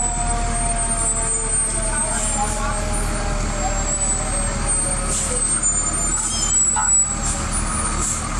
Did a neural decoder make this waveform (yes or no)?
no